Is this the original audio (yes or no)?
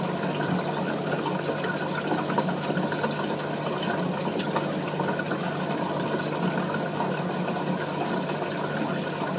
yes